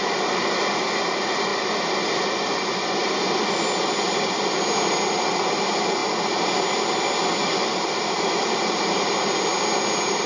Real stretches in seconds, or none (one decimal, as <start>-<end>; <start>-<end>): 0.0-10.3